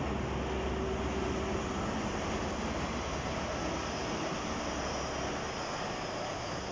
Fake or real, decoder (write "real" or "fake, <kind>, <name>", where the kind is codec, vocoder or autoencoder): real